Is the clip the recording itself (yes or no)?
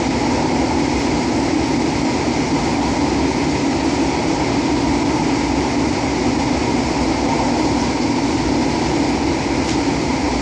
yes